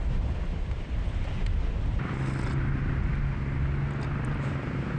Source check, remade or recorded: recorded